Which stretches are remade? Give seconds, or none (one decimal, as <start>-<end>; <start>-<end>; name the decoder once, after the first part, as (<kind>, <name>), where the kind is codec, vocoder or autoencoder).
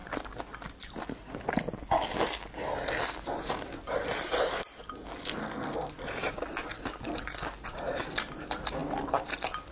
5.4-5.9 (codec, SNAC)